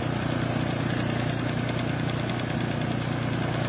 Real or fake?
real